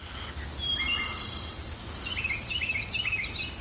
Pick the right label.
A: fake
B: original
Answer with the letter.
B